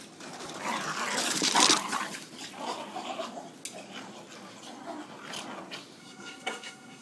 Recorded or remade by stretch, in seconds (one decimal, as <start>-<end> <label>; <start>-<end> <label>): 0.0-6.0 recorded; 6.0-7.0 remade